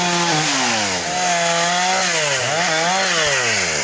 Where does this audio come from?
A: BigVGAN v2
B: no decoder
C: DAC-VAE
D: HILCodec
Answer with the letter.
B